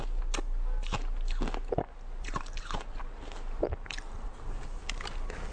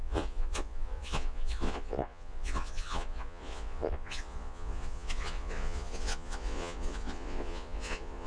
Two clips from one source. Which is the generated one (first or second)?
second